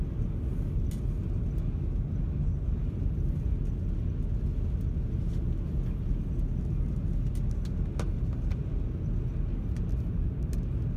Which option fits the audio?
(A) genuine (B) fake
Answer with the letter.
A